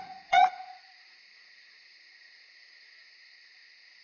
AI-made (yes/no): yes